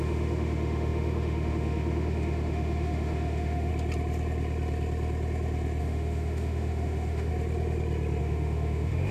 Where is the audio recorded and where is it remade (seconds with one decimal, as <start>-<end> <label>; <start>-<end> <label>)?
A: 0.0-3.7 remade; 3.7-5.8 recorded; 5.8-7.3 remade; 7.3-8.2 recorded; 8.2-9.1 remade